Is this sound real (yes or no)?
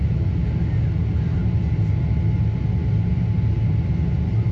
yes